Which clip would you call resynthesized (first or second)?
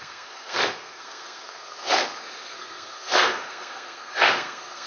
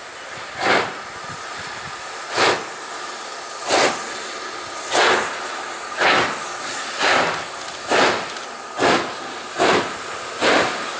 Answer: first